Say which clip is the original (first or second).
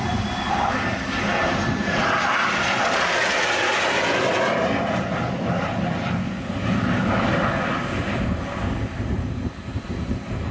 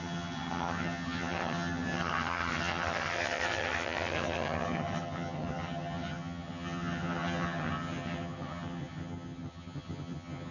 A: first